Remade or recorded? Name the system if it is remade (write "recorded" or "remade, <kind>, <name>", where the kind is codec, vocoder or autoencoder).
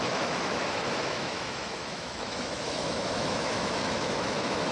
remade, autoencoder, DAC-VAE